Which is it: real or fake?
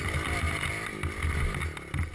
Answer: real